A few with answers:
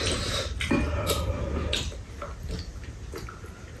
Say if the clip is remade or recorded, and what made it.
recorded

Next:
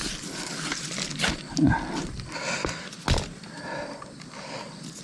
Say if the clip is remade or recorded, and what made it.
recorded